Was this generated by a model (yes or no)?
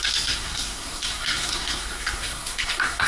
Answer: yes